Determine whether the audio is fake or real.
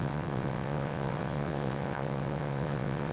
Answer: fake